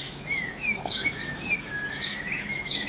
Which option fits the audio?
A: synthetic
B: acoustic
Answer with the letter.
A